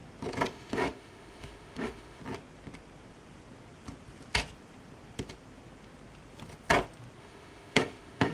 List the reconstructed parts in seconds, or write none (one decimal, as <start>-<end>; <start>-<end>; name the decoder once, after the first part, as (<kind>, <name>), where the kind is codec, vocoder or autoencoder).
0.5-2.2 (autoencoder, DAC-VAE); 7.2-8.3